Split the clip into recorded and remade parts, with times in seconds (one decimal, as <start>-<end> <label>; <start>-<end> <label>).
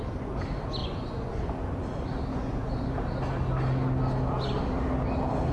0.0-0.8 recorded; 0.8-1.5 remade; 1.5-2.3 recorded; 2.3-2.9 remade; 2.9-5.5 recorded